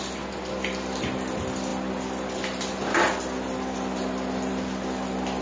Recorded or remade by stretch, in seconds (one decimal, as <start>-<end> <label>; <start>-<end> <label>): 0.0-5.4 recorded